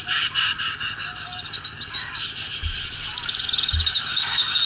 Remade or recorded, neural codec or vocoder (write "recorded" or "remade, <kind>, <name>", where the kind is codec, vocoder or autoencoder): remade, codec, DAC